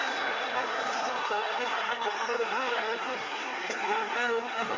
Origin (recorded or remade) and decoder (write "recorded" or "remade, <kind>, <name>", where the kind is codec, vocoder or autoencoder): remade, codec, SNAC